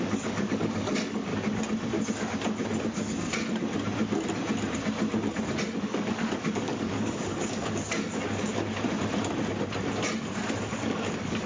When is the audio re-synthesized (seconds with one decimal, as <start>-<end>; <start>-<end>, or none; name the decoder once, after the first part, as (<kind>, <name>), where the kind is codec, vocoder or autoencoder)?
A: 0.0-1.3 (codec, DAC); 5.8-8.5; 10.6-11.5